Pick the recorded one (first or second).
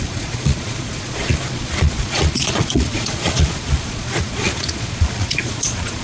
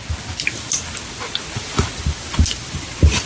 second